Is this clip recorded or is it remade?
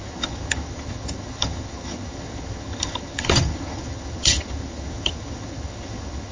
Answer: remade